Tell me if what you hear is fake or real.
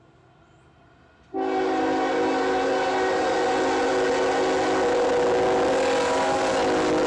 real